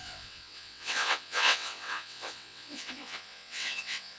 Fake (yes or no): yes